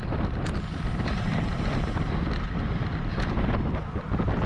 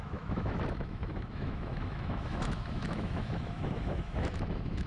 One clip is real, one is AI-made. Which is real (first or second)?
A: first